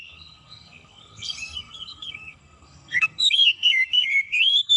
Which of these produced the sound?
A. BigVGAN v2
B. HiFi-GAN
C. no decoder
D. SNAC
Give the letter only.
D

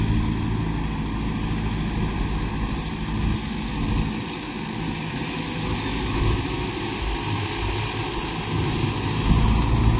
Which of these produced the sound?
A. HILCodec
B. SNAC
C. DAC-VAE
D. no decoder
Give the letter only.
D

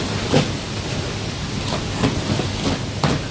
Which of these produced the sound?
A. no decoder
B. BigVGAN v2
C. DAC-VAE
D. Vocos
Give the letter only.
A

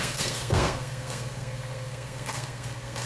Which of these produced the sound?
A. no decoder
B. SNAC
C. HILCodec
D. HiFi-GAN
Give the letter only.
B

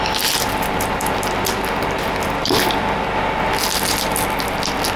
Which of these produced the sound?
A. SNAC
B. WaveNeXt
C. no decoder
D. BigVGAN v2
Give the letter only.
C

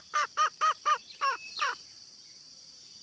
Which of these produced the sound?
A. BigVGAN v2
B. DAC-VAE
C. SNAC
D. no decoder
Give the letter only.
A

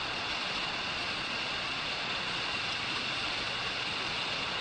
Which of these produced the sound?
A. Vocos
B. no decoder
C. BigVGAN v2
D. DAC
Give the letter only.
A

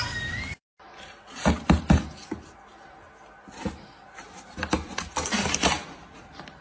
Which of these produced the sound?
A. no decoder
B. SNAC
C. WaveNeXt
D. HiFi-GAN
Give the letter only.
A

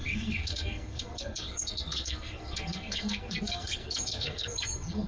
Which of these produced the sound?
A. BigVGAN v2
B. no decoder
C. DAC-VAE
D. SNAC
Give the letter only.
D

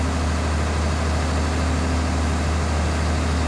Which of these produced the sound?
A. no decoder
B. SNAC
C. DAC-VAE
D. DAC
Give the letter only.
A